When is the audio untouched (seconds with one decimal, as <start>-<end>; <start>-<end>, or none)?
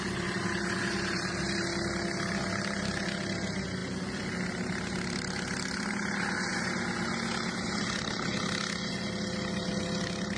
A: 0.0-10.4